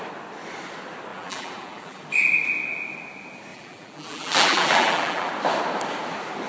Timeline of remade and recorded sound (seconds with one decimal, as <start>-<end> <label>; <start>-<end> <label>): 0.0-1.1 recorded; 1.1-2.0 remade; 2.0-3.5 recorded; 3.5-5.3 remade; 5.3-6.5 recorded

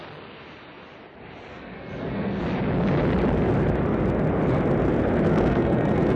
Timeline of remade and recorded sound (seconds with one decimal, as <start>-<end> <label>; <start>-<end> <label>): 0.0-1.5 recorded; 1.5-2.4 remade; 2.4-5.3 recorded; 5.3-6.2 remade

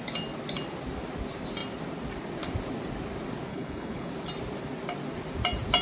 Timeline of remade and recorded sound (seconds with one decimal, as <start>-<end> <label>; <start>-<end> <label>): 0.0-3.5 recorded; 3.5-4.1 remade; 4.1-5.8 recorded